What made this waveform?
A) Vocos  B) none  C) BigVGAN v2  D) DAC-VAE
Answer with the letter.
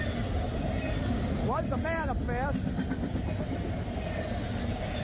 B